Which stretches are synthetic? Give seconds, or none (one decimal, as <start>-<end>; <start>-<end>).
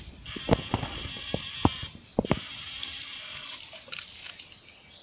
none